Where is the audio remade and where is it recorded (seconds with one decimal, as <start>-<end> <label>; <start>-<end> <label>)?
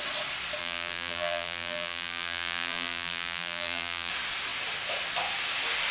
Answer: 0.0-0.6 recorded; 0.6-4.1 remade; 4.1-5.9 recorded